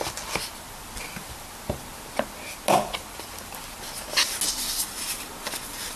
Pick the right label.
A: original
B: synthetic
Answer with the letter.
A